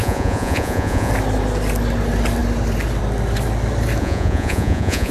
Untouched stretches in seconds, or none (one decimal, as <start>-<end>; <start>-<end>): 1.1-4.0